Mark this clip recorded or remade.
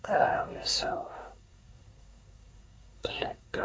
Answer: remade